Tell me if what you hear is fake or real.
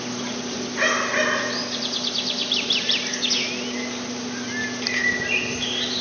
real